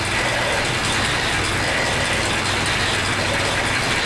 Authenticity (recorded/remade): recorded